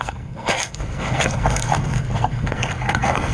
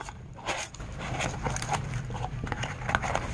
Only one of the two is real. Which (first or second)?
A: second